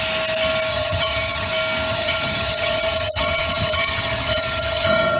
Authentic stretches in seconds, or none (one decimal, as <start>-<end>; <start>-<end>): 0.0-0.7; 1.5-1.9